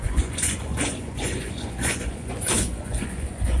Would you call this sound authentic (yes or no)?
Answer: no